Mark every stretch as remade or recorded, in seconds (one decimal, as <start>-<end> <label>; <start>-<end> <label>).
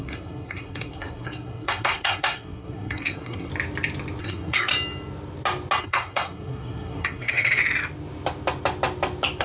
0.0-3.5 remade; 3.5-4.2 recorded; 4.2-4.7 remade; 4.7-5.8 recorded; 5.8-7.6 remade; 7.6-9.4 recorded